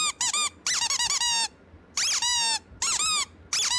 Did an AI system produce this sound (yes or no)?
no